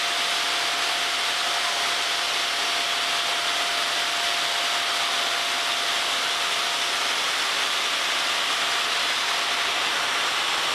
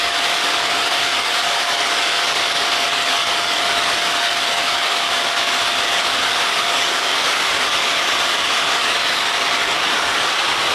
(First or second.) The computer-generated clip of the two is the second